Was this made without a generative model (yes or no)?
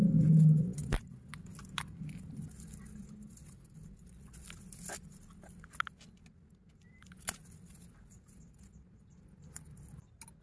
yes